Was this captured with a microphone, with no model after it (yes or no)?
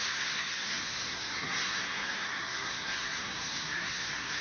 no